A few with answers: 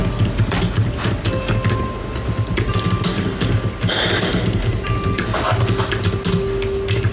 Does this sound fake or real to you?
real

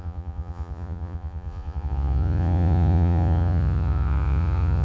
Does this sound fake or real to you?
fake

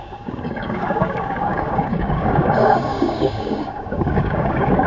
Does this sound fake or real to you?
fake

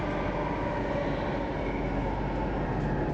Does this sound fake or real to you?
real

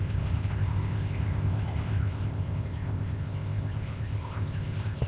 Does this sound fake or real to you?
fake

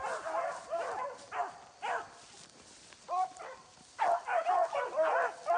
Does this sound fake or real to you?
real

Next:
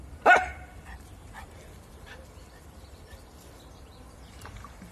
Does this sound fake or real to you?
fake